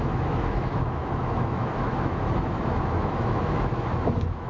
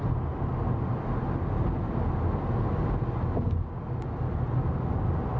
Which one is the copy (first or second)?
first